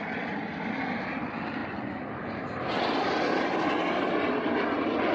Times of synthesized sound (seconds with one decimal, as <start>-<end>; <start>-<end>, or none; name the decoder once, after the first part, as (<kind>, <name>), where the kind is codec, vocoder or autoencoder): none